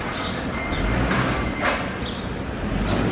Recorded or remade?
remade